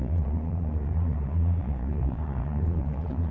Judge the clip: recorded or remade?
remade